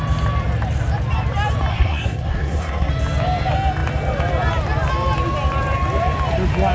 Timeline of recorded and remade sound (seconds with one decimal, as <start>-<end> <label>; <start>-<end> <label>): 0.0-1.7 recorded; 1.7-2.9 remade; 2.9-6.7 recorded